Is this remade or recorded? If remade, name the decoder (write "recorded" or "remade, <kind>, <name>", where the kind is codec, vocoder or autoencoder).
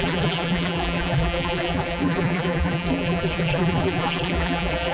remade, vocoder, BigVGAN v2